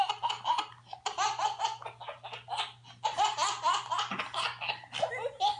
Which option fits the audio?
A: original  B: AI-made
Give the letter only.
A